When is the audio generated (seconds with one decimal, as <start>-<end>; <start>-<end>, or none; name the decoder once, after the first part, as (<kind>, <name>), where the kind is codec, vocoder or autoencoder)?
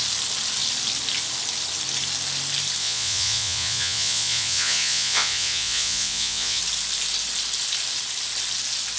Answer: 2.8-6.6 (vocoder, Vocos)